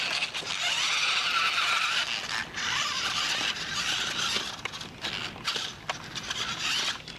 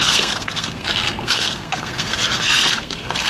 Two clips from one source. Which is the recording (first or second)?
first